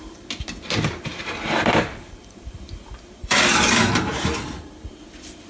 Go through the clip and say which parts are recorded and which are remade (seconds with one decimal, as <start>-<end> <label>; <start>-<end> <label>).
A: 0.0-1.1 recorded; 1.1-4.4 remade; 4.4-5.5 recorded